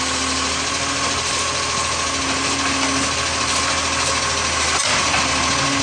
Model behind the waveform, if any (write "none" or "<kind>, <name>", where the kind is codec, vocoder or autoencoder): none